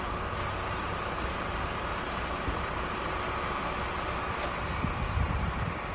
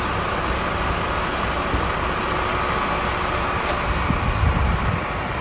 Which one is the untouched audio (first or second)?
second